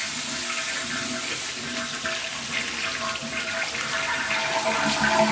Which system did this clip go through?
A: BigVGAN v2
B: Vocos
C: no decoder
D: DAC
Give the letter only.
C